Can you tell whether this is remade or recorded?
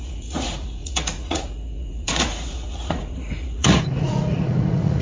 remade